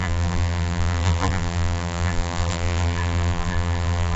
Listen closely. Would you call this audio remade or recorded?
remade